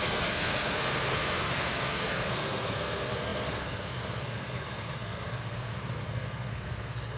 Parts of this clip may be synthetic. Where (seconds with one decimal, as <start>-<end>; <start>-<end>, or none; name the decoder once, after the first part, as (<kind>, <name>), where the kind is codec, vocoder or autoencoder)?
0.0-7.2 (codec, SNAC)

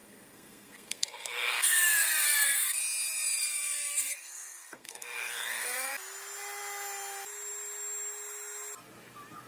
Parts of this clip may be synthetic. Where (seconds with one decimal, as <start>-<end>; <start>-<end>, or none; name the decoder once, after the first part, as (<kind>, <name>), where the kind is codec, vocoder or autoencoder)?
0.0-2.8 (codec, SNAC); 3.4-5.9

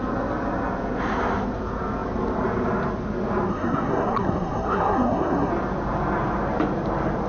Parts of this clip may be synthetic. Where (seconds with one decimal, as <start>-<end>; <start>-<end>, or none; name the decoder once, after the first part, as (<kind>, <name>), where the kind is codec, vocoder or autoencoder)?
3.5-5.5 (codec, SNAC)

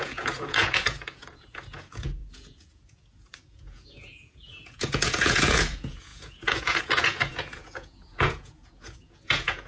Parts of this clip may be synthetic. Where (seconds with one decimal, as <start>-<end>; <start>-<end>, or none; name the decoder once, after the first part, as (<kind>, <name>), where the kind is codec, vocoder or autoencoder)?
0.0-9.7 (vocoder, Vocos)

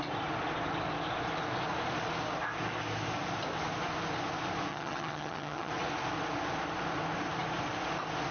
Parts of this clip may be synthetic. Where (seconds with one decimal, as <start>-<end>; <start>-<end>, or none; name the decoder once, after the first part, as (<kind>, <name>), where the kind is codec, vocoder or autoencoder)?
4.7-5.7 (vocoder, HiFi-GAN)

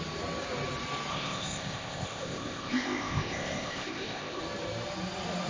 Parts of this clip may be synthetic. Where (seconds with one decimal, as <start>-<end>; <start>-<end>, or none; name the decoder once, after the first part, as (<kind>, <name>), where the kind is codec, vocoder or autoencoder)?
1.1-4.4 (codec, ZipCodec)